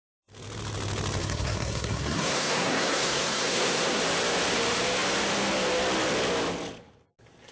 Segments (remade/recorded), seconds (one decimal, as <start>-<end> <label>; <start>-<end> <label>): 0.0-1.2 recorded; 1.2-4.0 remade; 4.0-7.5 recorded